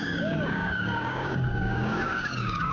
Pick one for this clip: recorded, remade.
remade